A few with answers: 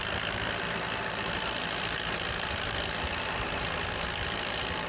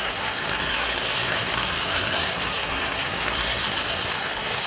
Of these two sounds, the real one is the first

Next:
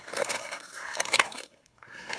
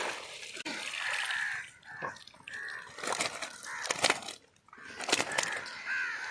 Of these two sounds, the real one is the second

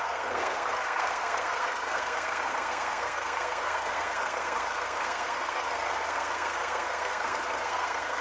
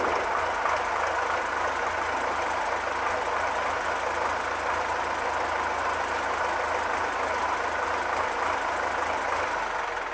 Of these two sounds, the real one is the second